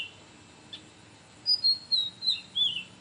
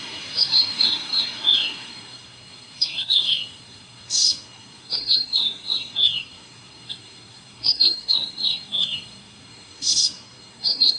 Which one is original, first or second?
first